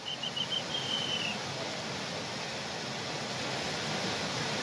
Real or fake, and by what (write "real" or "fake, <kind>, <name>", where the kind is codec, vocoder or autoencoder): real